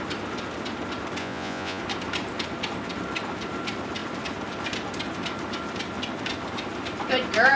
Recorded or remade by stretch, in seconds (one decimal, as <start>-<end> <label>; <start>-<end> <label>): 0.0-1.2 recorded; 1.2-1.8 remade; 1.8-7.6 recorded